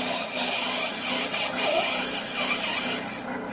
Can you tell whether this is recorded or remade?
recorded